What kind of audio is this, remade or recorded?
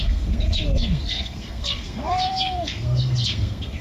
remade